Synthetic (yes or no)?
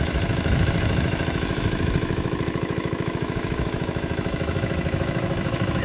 yes